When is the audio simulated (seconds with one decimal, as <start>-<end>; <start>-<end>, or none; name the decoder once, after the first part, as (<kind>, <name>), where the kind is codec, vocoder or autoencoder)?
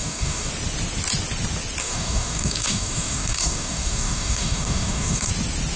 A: 0.0-0.5 (codec, DAC); 1.8-5.3